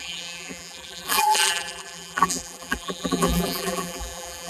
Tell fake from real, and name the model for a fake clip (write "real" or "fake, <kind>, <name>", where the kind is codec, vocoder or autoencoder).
fake, vocoder, BigVGAN v2